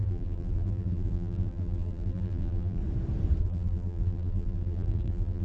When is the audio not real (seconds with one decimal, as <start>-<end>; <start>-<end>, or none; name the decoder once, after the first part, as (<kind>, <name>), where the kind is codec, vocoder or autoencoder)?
0.0-2.8 (vocoder, BigVGAN v2); 3.4-5.4